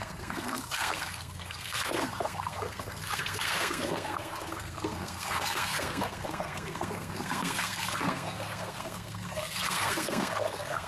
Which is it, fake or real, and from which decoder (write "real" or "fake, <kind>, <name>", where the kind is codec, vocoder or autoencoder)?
fake, codec, SNAC